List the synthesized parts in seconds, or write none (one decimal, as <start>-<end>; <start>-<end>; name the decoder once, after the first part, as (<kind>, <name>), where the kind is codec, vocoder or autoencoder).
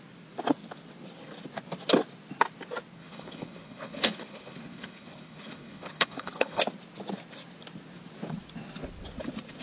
3.0-6.6 (codec, HILCodec)